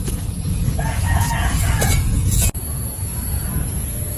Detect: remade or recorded remade